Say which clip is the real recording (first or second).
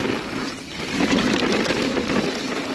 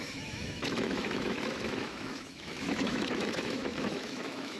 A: first